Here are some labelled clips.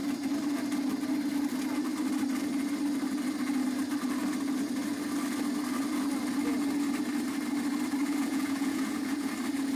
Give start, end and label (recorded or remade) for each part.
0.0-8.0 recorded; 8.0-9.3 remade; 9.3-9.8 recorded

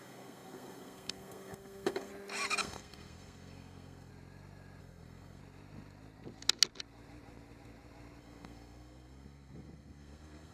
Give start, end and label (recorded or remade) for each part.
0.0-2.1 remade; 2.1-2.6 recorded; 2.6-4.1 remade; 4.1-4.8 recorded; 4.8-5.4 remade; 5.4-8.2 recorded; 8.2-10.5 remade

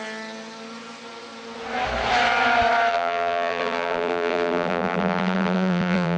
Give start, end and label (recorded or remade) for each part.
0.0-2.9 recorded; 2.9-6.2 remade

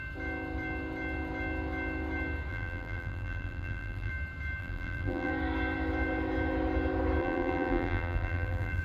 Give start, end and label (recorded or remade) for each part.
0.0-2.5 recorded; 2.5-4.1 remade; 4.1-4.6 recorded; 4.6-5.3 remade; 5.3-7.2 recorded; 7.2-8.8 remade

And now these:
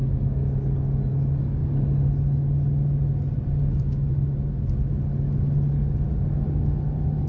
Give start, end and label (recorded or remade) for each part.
0.0-7.3 recorded

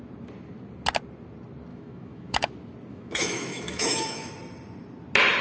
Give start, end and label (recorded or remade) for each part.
0.0-1.7 recorded; 1.7-2.5 remade; 2.5-2.9 recorded; 2.9-4.3 remade; 4.3-5.4 recorded